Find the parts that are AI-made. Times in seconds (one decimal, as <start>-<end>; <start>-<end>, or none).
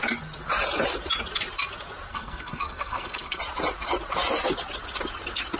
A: 2.1-3.4